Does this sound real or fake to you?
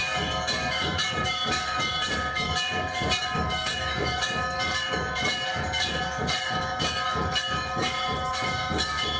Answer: fake